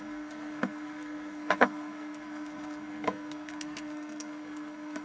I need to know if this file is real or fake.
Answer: fake